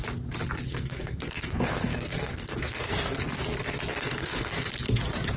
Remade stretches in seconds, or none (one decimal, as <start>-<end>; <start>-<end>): 0.7-3.2; 3.9-4.7